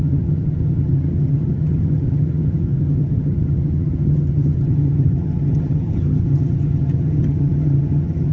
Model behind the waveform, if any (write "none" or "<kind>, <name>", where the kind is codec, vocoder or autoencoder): vocoder, HiFi-GAN